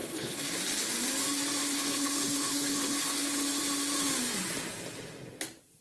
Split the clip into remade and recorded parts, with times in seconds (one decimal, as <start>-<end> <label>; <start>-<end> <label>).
0.0-0.5 remade; 0.5-1.6 recorded; 1.6-3.6 remade; 3.6-5.8 recorded